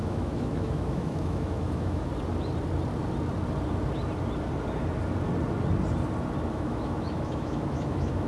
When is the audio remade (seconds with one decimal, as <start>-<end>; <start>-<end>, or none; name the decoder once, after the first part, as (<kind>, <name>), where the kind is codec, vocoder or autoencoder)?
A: 0.0-2.1 (autoencoder, DAC-VAE); 6.5-8.3